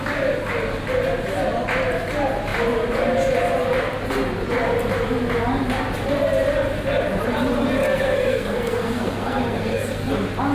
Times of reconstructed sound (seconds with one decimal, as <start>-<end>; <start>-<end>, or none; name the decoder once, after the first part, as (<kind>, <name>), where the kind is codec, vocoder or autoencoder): 7.8-10.1 (codec, SNAC)